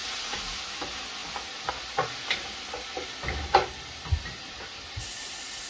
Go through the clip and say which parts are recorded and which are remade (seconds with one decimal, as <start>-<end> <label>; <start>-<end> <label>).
0.0-0.6 remade; 0.6-5.7 recorded